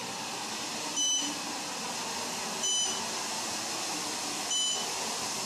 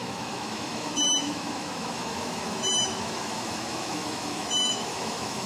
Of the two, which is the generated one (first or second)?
second